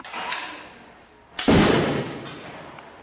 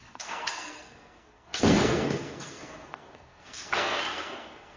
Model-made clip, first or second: second